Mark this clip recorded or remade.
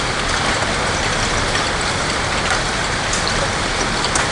recorded